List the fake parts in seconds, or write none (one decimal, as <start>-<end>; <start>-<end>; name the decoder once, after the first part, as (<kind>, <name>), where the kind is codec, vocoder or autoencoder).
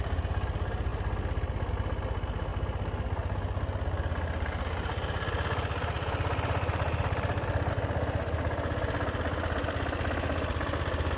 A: none